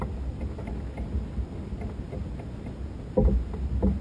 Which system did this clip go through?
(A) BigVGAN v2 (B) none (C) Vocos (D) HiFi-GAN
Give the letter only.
B